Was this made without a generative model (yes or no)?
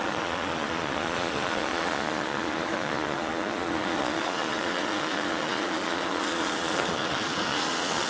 no